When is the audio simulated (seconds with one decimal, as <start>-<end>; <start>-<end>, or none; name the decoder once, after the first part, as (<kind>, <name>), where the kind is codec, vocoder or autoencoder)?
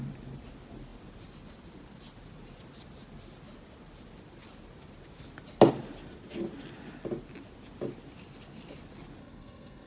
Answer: 9.2-9.9 (codec, SNAC)